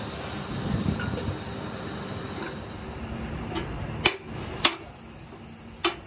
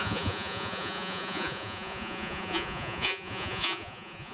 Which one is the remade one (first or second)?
second